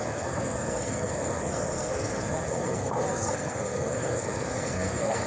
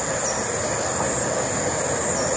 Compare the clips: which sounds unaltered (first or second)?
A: second